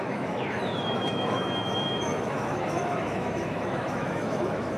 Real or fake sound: fake